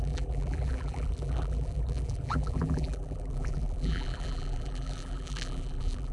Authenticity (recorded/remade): remade